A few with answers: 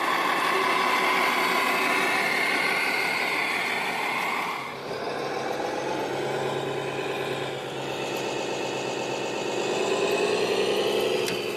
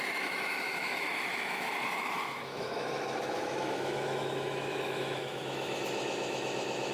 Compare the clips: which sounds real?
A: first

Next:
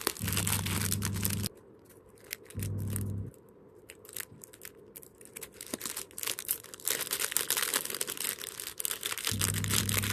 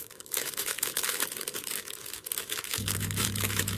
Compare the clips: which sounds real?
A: first